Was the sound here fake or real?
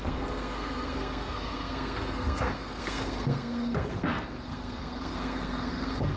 fake